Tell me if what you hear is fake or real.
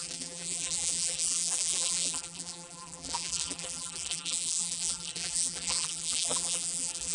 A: fake